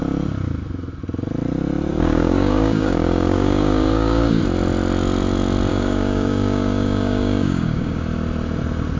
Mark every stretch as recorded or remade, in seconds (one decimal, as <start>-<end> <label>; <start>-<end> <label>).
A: 0.0-1.9 recorded; 1.9-4.4 remade; 4.4-5.7 recorded; 5.7-8.0 remade; 8.0-9.0 recorded